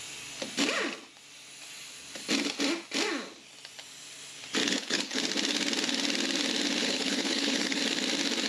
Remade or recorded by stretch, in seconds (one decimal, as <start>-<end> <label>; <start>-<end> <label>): 0.0-4.6 recorded; 4.6-5.2 remade; 5.2-6.8 recorded; 6.8-7.8 remade; 7.8-8.5 recorded

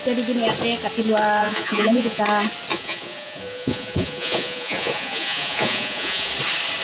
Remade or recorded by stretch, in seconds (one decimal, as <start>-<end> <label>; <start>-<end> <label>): 0.0-1.4 recorded; 1.4-2.2 remade; 2.2-2.7 recorded; 2.7-6.3 remade; 6.3-6.8 recorded

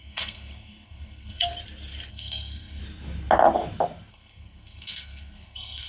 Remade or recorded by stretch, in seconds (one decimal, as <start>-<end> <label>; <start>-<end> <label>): 0.0-1.5 remade; 1.5-2.1 recorded; 2.1-2.8 remade; 2.8-4.1 recorded; 4.1-5.9 remade

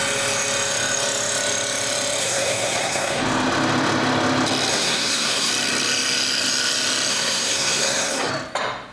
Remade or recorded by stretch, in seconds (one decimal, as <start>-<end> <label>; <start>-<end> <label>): 0.0-2.2 recorded; 2.2-3.2 remade; 3.2-4.7 recorded; 4.7-5.5 remade; 5.5-7.1 recorded; 7.1-8.3 remade; 8.3-8.9 recorded

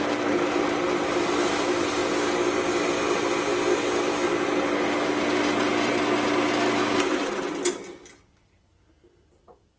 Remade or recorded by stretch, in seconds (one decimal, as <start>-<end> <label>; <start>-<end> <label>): 0.0-9.8 recorded

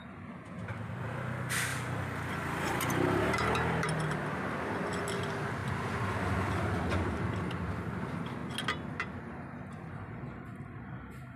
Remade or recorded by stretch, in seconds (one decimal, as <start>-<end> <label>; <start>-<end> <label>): 0.0-1.7 recorded; 1.7-4.0 remade; 4.0-10.5 recorded; 10.5-11.4 remade

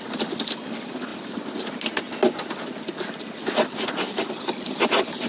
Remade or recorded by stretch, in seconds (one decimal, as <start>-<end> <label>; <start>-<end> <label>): 0.0-5.3 recorded

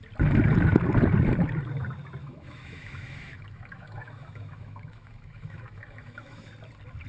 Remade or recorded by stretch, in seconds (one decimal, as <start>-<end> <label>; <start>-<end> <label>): 0.0-2.2 recorded; 2.2-6.5 remade; 6.5-7.1 recorded